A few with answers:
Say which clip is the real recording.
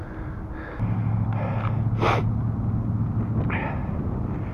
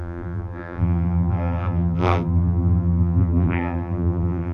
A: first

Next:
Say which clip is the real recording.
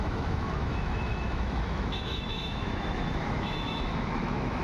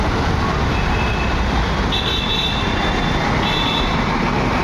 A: second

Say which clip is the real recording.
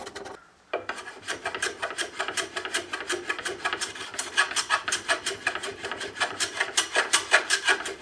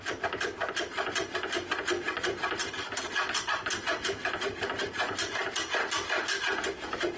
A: second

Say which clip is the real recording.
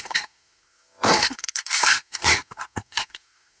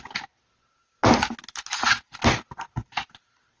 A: second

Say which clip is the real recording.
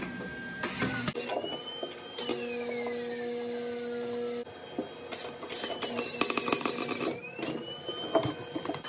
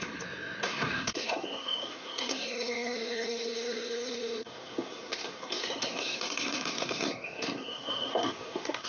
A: first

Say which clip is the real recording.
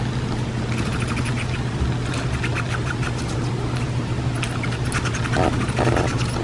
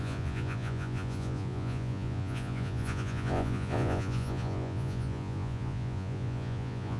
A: first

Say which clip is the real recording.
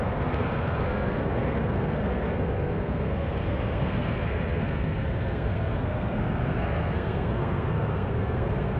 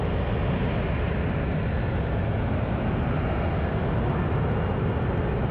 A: second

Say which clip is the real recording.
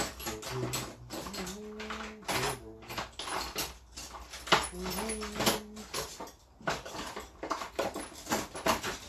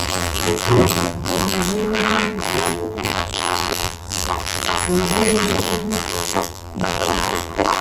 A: first